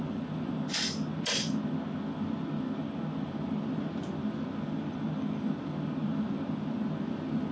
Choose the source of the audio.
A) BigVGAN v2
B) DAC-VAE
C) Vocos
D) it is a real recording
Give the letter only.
D